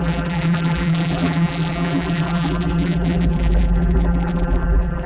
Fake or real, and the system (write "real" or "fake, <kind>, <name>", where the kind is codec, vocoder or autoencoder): fake, vocoder, BigVGAN v2